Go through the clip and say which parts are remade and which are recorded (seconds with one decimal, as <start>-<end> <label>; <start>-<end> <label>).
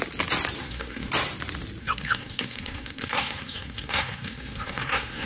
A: 0.0-0.6 recorded; 0.6-1.1 remade; 1.1-1.8 recorded; 1.8-5.3 remade